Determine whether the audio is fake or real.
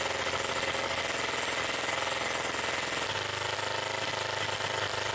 real